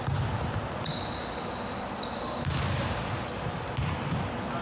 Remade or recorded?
recorded